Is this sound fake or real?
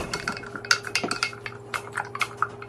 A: real